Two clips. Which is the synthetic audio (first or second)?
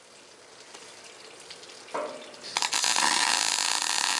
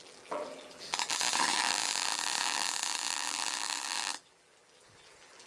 second